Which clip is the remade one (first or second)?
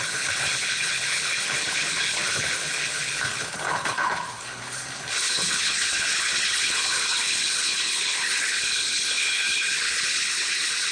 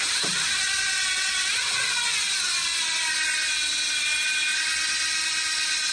first